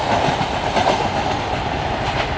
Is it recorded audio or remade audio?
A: recorded